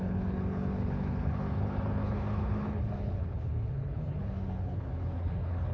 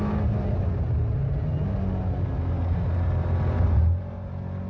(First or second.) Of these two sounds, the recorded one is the second